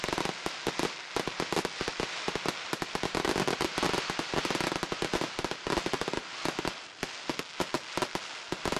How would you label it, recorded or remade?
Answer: recorded